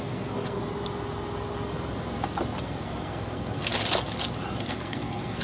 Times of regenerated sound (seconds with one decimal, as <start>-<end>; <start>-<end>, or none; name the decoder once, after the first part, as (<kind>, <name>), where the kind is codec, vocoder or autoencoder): 0.0-0.6 (codec, SNAC); 2.6-3.7; 4.6-5.4